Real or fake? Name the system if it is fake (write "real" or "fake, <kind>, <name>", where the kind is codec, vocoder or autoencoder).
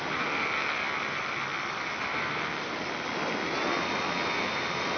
real